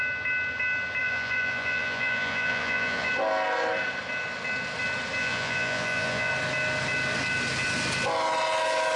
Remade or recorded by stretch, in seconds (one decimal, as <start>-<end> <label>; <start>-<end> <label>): 0.0-1.0 recorded; 1.0-3.1 remade; 3.1-5.2 recorded; 5.2-6.3 remade; 6.3-9.0 recorded